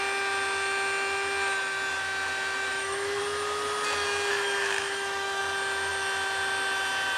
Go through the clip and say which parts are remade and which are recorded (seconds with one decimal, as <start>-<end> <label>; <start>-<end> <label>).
0.0-2.7 recorded; 2.7-3.2 remade; 3.2-4.3 recorded; 4.3-5.4 remade; 5.4-7.2 recorded